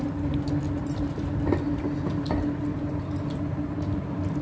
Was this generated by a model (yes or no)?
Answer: no